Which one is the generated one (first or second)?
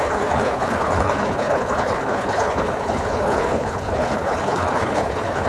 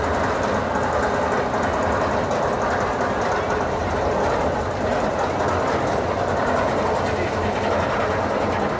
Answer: first